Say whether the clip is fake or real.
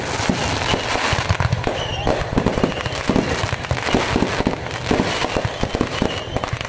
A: real